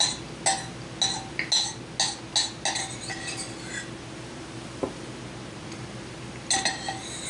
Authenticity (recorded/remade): recorded